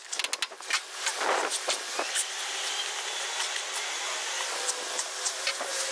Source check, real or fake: real